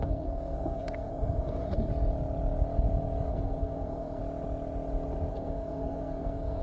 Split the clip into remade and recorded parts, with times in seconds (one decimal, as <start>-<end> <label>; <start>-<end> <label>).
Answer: 0.0-1.9 remade; 1.9-3.3 recorded; 3.3-4.2 remade; 4.2-5.3 recorded; 5.3-6.6 remade